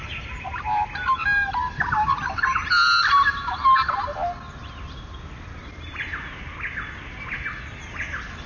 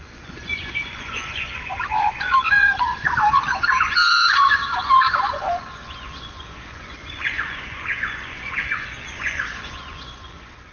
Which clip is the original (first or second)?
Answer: first